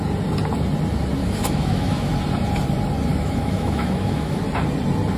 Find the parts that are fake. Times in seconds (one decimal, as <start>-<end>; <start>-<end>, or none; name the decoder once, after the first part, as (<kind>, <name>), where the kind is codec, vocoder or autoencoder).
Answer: 1.2-2.1 (autoencoder, DAC-VAE); 3.1-4.4